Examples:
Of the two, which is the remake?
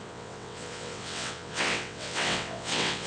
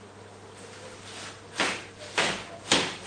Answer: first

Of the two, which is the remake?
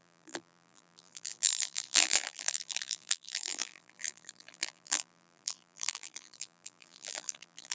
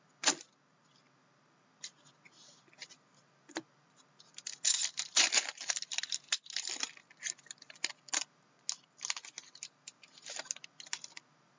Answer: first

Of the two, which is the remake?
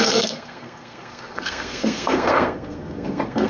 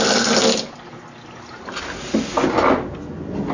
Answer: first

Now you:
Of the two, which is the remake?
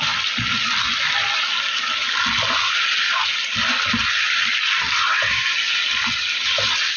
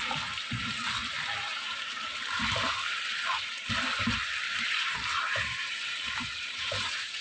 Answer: second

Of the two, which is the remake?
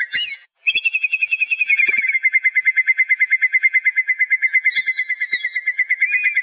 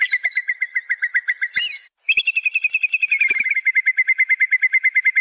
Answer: first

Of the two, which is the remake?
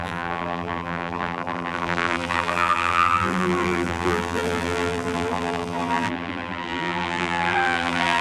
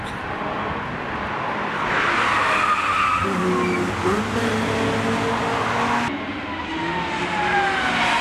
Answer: first